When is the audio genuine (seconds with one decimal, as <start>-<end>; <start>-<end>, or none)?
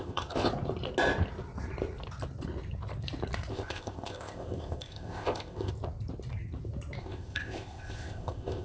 0.5-3.5; 5.7-7.0